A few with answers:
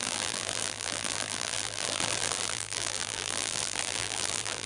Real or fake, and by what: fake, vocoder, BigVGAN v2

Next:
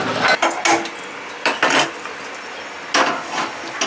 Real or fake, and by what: real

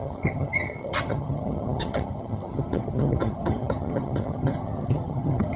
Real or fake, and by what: fake, vocoder, HiFi-GAN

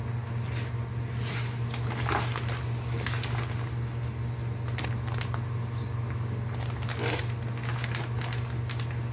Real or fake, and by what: real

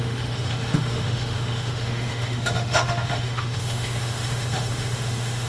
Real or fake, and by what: fake, autoencoder, DAC-VAE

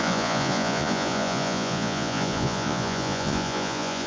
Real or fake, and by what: fake, vocoder, Vocos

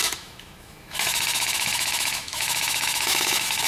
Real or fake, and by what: fake, autoencoder, DAC-VAE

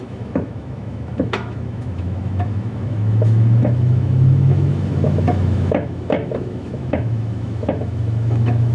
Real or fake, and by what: fake, autoencoder, DAC-VAE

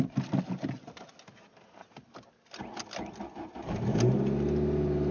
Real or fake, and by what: real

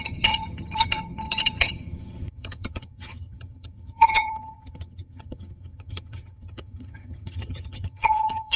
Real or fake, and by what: fake, vocoder, HiFi-GAN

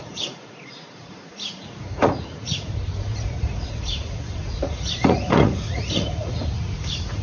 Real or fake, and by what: fake, vocoder, Vocos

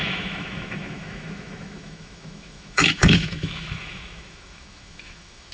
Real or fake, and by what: fake, autoencoder, DAC-VAE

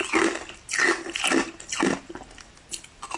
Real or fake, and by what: real